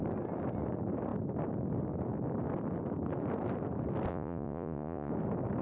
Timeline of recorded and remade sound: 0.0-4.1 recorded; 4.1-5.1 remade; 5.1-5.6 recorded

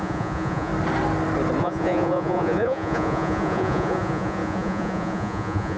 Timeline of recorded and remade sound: 0.0-0.7 remade; 0.7-1.6 recorded; 1.6-5.8 remade